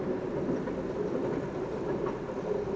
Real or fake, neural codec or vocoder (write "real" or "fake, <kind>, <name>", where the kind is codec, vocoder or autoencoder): real